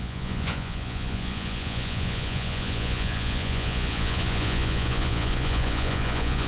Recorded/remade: remade